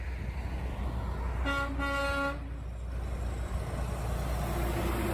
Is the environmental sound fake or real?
real